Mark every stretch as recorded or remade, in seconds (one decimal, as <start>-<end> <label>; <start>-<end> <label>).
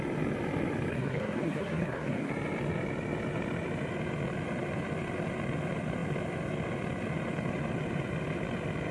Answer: 0.0-0.9 recorded; 0.9-2.3 remade; 2.3-8.9 recorded